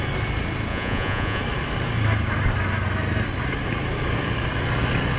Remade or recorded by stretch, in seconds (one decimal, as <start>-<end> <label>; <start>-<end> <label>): 0.0-0.7 recorded; 0.7-1.4 remade; 1.4-5.2 recorded